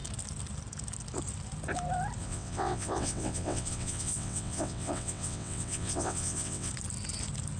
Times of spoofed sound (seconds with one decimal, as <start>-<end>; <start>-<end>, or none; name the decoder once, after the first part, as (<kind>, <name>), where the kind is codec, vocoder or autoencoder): 2.2-6.7 (vocoder, WaveNeXt)